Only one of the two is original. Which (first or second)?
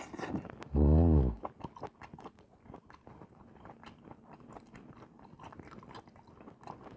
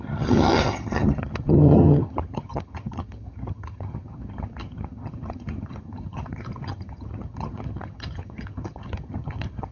first